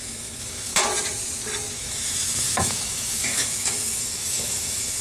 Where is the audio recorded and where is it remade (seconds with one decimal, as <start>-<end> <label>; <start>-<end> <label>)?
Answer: 0.0-0.7 remade; 0.7-1.7 recorded; 1.7-5.0 remade